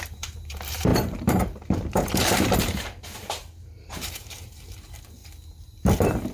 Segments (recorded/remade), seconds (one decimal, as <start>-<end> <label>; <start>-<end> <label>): 0.0-5.2 remade; 5.2-6.3 recorded